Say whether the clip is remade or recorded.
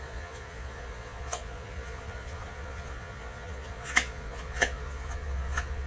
remade